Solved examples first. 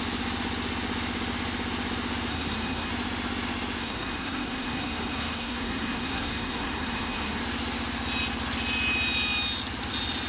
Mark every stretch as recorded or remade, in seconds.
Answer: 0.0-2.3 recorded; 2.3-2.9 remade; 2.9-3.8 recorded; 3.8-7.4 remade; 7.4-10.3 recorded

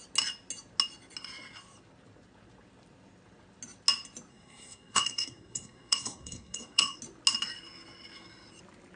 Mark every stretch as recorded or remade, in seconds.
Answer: 0.0-4.3 recorded; 4.3-7.0 remade; 7.0-9.0 recorded